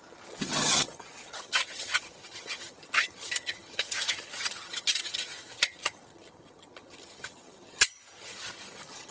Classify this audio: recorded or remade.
remade